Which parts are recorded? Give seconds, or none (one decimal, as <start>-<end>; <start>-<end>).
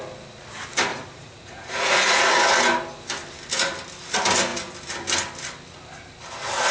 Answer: 0.0-0.9; 2.3-6.7